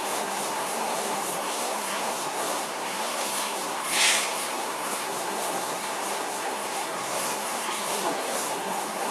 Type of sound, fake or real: fake